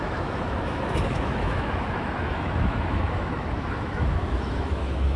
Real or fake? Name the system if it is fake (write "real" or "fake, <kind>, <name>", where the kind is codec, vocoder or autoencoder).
fake, autoencoder, DAC-VAE